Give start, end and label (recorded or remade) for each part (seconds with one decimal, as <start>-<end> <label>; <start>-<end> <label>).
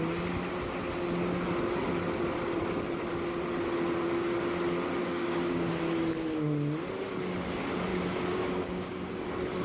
0.0-5.0 recorded; 5.0-5.7 remade; 5.7-7.9 recorded; 7.9-9.1 remade; 9.1-9.6 recorded